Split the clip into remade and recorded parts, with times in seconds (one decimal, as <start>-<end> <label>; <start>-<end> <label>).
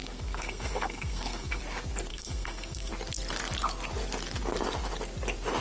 0.0-1.6 remade; 1.6-2.1 recorded; 2.1-2.9 remade; 2.9-5.6 recorded